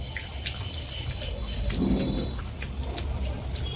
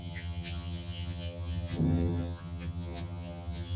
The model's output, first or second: second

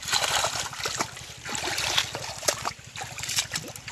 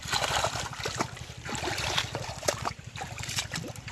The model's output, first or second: second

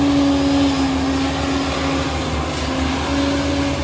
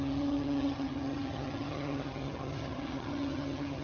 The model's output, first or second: second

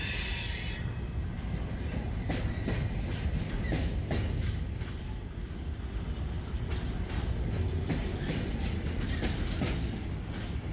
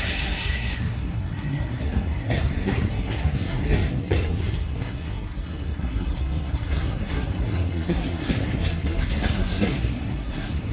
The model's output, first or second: second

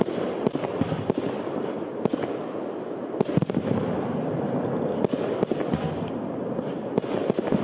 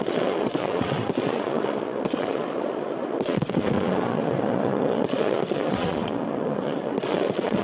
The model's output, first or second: second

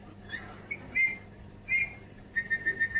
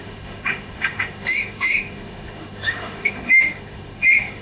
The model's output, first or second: second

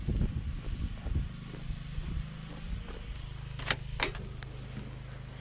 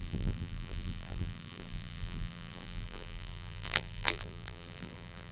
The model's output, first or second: second